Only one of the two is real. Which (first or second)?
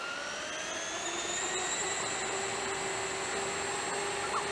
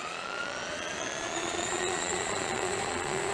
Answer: first